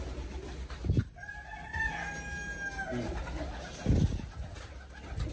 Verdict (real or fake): real